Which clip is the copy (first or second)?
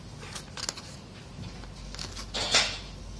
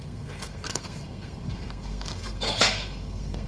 second